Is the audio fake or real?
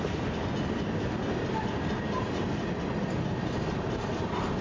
real